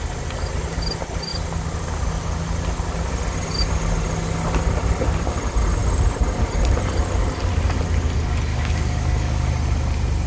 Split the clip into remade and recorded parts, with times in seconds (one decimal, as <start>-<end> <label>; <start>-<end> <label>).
0.0-8.5 recorded; 8.5-9.5 remade; 9.5-10.3 recorded